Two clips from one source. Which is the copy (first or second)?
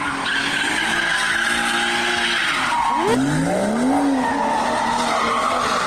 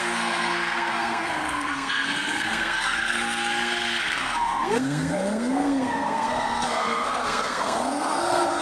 second